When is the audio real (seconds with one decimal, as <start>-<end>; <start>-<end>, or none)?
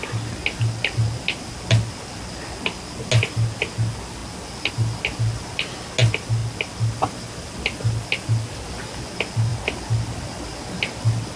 0.0-11.4